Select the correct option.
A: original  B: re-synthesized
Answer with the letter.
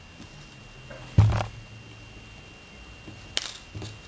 A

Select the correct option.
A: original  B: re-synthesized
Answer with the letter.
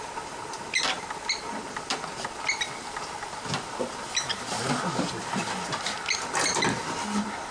A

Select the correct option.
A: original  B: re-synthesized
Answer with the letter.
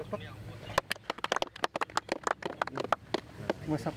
A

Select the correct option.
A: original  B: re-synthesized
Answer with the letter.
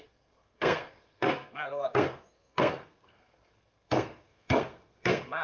B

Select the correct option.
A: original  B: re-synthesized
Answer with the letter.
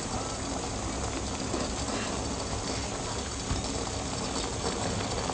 A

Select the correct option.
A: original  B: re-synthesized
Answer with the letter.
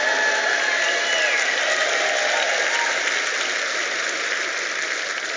A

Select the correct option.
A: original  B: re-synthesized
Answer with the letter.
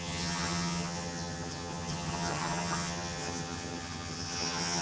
B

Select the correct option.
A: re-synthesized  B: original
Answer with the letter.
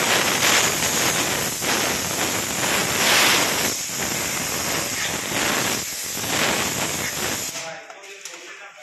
B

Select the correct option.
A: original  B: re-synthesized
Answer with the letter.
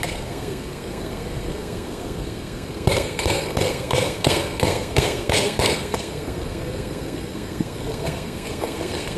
B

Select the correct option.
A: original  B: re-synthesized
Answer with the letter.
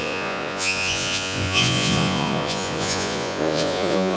B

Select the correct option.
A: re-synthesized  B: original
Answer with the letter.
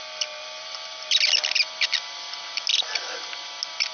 B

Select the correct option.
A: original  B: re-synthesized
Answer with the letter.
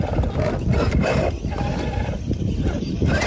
A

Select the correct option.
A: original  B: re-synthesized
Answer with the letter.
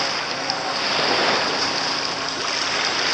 A